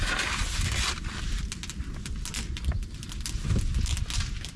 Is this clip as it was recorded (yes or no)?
yes